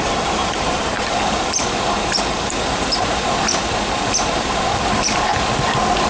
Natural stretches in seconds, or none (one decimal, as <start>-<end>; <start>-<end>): 5.3-6.1